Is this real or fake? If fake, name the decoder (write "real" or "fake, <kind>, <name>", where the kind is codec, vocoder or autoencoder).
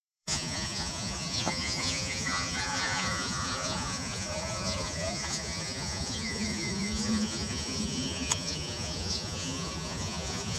fake, vocoder, Vocos